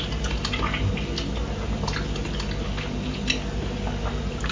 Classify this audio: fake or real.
real